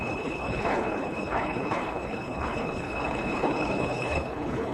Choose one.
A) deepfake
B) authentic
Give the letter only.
A